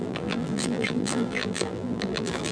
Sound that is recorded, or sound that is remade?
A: remade